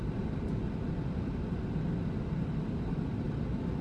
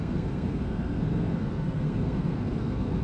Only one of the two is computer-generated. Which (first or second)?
second